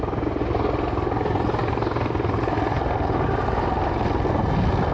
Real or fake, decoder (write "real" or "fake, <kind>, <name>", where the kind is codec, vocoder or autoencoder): real